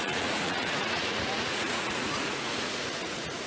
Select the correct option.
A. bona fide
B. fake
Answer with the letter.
B